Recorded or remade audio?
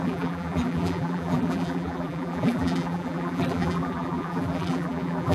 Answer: remade